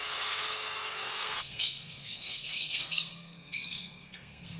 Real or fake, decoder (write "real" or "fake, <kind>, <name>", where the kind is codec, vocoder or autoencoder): fake, codec, SNAC